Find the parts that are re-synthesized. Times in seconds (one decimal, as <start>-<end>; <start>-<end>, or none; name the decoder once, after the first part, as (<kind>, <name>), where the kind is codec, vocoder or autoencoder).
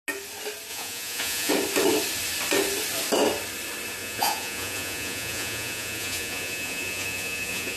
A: 0.7-1.5 (vocoder, Vocos); 4.0-7.8